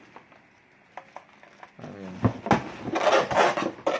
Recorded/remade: recorded